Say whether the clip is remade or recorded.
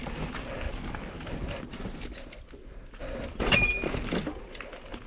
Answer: recorded